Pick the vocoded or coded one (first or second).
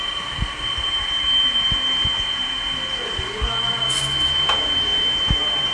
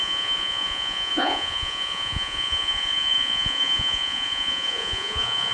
second